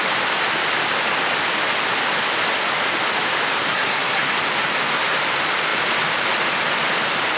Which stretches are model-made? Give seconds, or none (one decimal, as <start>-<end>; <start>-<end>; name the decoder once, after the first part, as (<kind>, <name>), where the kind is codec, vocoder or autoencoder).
3.6-4.3 (codec, SNAC)